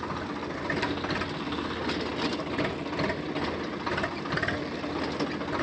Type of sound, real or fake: real